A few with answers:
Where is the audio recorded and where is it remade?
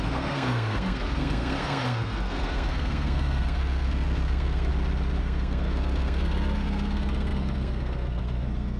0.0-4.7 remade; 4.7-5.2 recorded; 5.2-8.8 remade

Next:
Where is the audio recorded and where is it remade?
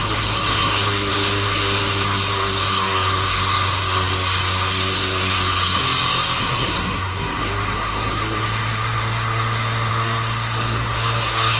0.0-5.8 remade; 5.8-6.4 recorded; 6.4-11.6 remade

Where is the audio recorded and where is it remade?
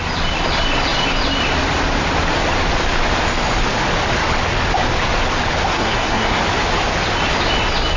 0.0-5.7 recorded; 5.7-6.4 remade; 6.4-8.0 recorded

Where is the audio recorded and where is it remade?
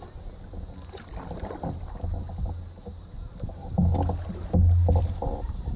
0.0-5.8 recorded